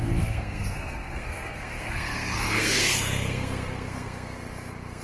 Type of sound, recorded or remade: remade